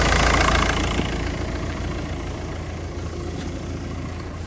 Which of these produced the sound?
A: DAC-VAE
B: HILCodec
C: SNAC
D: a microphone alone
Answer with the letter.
D